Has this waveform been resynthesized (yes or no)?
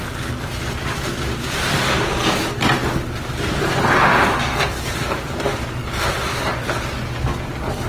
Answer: no